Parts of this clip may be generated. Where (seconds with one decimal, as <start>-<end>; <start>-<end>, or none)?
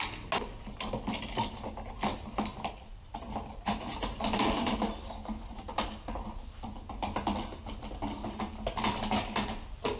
none